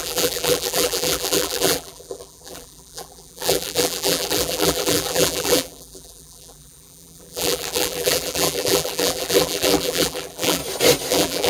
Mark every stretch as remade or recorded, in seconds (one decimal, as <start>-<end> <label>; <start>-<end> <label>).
0.0-10.6 remade; 10.6-11.1 recorded; 11.1-11.5 remade